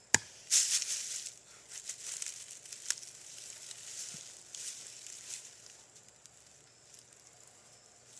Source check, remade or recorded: recorded